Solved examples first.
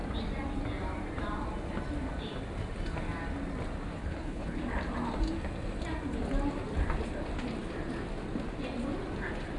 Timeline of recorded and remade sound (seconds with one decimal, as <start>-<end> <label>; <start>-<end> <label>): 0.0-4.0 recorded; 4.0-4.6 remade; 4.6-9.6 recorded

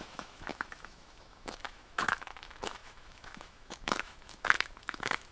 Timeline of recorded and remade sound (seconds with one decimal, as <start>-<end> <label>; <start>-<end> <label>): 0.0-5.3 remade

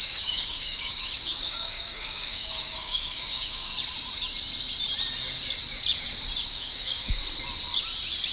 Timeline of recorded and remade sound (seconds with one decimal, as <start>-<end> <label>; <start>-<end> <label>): 0.0-3.7 remade; 3.7-6.5 recorded; 6.5-7.2 remade; 7.2-8.3 recorded

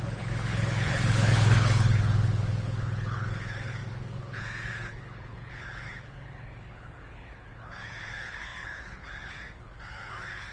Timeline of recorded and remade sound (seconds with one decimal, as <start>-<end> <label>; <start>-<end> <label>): 0.0-10.5 remade

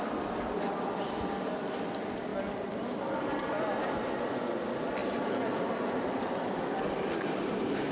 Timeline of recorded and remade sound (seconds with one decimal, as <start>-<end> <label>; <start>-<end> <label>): 0.0-7.9 recorded